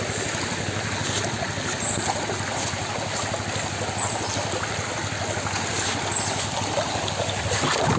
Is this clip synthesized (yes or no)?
no